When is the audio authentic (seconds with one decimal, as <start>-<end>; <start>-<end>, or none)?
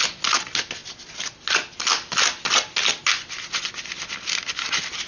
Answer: 0.0-5.1